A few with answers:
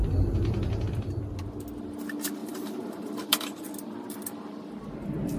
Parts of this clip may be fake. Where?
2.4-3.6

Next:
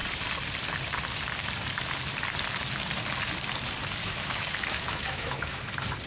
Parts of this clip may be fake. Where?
4.0-5.6

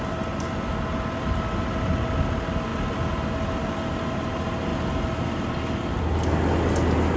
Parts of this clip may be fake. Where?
none

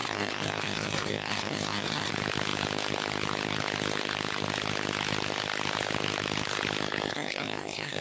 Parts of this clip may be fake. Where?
0.0-2.1; 7.1-8.0

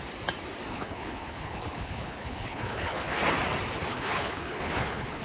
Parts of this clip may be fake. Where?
0.7-3.2; 3.9-5.2

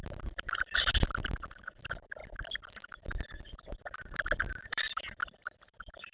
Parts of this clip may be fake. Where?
0.0-0.9; 1.8-2.2; 4.5-6.1

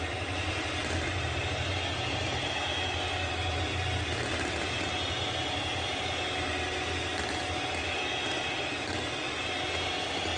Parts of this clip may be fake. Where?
none

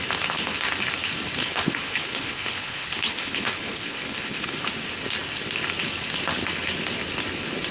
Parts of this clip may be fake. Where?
1.4-4.7